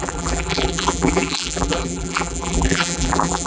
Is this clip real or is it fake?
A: fake